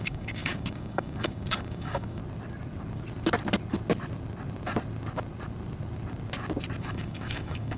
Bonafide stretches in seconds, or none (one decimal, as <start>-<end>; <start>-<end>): 2.2-6.8